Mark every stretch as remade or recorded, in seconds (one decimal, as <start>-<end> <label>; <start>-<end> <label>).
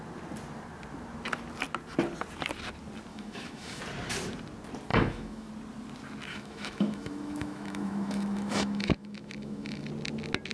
0.0-3.1 recorded; 3.1-3.8 remade; 3.8-4.9 recorded; 4.9-5.5 remade; 5.5-6.3 recorded; 6.3-9.9 remade; 9.9-10.5 recorded